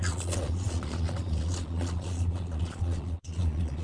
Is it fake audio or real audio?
fake